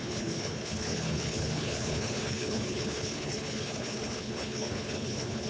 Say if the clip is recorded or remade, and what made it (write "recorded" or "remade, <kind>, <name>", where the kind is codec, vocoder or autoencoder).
remade, codec, HILCodec